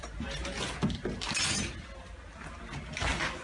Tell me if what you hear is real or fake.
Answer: real